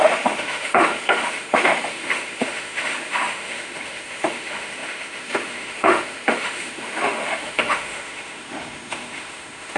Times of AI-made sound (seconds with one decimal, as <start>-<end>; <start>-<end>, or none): 0.0-9.8